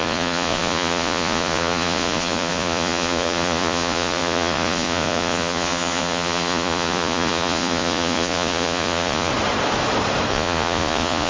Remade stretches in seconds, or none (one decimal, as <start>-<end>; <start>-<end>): 0.0-9.3; 10.3-11.3